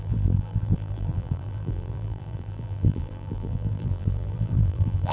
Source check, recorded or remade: remade